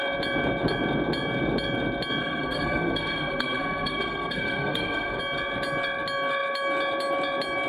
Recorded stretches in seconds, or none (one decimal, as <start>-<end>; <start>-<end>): 0.0-2.2; 5.2-7.7